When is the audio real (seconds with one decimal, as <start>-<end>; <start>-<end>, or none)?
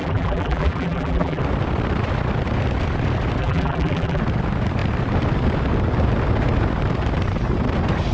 1.4-3.4; 4.2-8.1